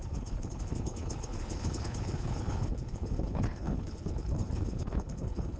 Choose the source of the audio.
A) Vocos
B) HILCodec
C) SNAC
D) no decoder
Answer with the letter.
B